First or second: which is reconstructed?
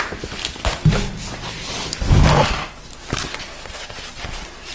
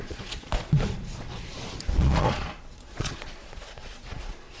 second